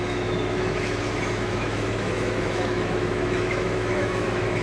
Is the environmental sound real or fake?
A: fake